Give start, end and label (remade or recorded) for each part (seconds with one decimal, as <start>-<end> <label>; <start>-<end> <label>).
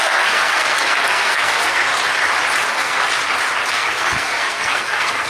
0.0-1.9 remade; 1.9-2.7 recorded; 2.7-3.1 remade; 3.1-3.7 recorded; 3.7-5.3 remade